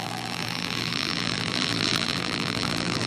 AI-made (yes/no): yes